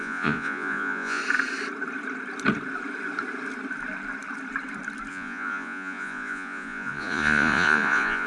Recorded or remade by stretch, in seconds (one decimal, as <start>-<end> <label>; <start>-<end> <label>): 0.0-1.2 remade; 1.2-5.1 recorded; 5.1-8.3 remade